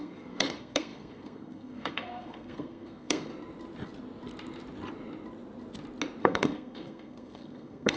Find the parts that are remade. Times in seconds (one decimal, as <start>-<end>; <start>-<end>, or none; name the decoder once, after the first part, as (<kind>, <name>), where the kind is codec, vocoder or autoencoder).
0.0-3.3 (codec, SNAC); 6.2-8.0